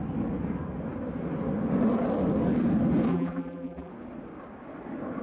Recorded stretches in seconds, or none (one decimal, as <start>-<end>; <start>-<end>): 0.0-3.1; 3.9-5.2